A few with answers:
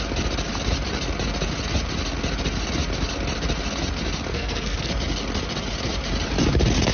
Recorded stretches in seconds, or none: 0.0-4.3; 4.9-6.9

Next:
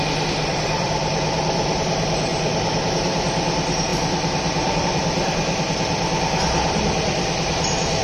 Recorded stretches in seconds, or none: 2.3-2.9

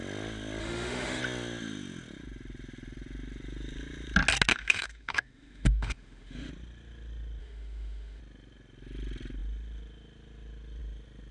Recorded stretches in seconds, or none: 0.0-0.6; 1.2-4.5; 6.5-7.4; 8.2-11.3